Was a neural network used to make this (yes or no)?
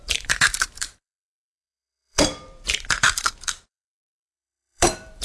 yes